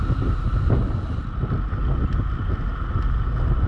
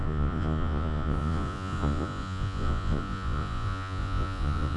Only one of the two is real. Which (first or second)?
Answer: first